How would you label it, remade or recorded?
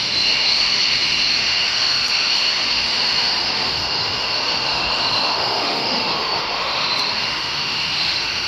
remade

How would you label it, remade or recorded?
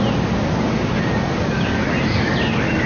recorded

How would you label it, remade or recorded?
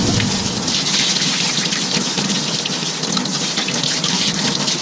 recorded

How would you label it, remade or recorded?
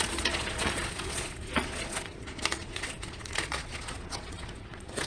remade